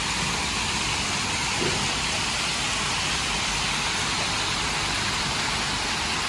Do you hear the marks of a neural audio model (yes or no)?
no